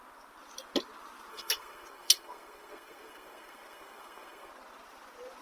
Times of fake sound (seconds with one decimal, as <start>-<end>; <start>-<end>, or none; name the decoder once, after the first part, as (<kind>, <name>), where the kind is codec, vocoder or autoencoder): 1.3-4.5 (codec, SNAC)